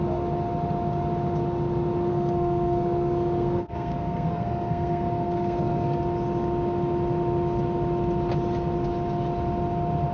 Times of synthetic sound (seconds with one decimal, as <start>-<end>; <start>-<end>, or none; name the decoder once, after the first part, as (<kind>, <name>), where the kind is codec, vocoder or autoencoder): 2.1-6.0 (codec, SNAC)